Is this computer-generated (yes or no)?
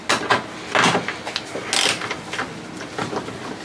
no